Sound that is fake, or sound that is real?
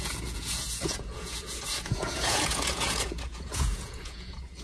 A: fake